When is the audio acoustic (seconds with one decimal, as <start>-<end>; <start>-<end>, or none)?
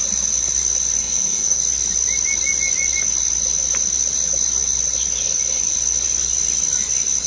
0.0-1.0; 1.6-7.3